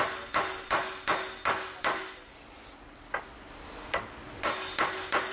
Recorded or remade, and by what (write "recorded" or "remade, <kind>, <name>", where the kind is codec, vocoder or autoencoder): recorded